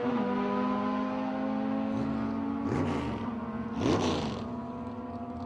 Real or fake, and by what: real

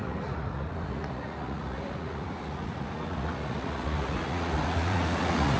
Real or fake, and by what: fake, vocoder, Vocos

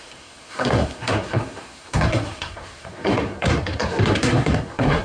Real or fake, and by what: fake, codec, SNAC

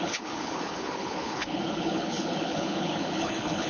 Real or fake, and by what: fake, codec, HILCodec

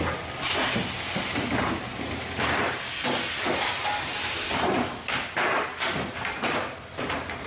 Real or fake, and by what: real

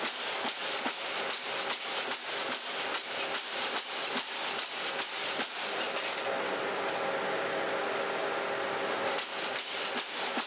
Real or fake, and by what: real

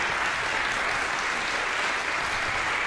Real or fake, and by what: real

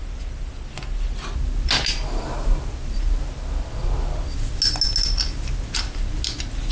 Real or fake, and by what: real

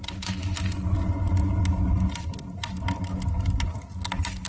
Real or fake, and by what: real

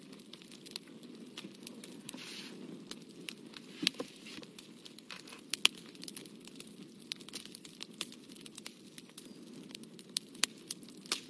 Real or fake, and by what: real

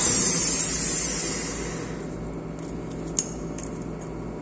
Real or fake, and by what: real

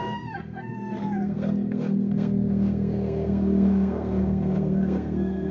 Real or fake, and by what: fake, codec, SNAC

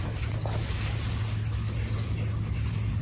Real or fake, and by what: real